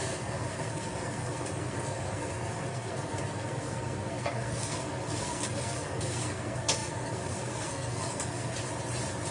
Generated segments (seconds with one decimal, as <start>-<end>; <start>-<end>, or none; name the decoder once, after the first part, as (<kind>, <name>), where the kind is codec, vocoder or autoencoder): 0.0-8.5 (codec, SNAC)